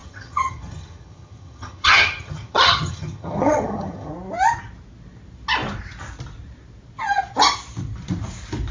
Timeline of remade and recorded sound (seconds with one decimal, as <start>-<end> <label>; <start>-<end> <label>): 0.0-4.1 remade; 4.1-8.7 recorded